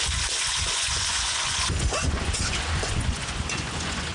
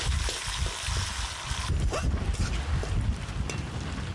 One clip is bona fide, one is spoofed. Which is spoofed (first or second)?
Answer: first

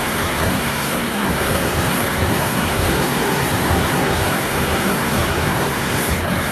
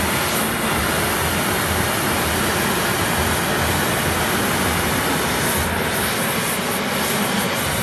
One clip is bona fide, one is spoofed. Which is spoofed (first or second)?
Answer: first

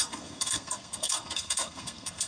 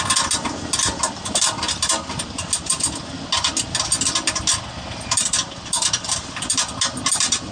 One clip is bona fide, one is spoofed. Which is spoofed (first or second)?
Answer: first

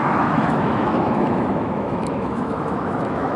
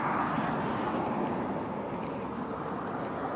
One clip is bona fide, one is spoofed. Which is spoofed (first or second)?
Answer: first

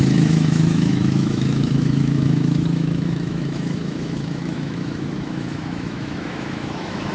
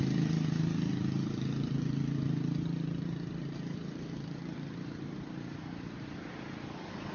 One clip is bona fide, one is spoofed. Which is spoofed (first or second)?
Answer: first